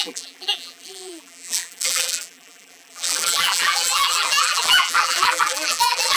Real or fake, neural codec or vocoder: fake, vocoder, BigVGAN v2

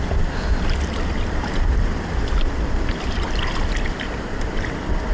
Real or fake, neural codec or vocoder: fake, vocoder, BigVGAN v2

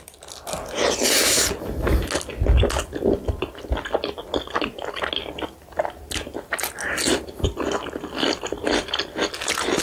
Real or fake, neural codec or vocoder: real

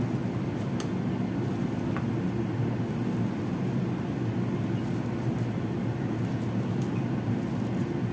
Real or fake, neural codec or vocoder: real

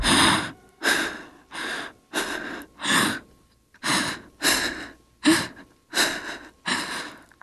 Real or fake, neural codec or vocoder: real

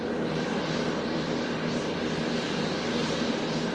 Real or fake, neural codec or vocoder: real